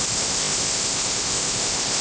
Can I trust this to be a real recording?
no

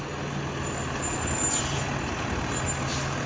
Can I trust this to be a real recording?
yes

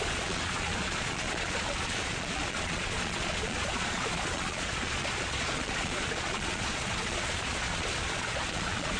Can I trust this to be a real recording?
no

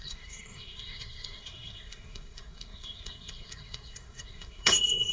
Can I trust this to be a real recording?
no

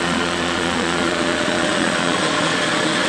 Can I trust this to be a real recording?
no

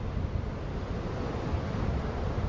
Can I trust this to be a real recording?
yes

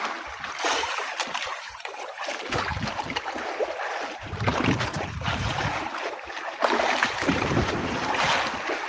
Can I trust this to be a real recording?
no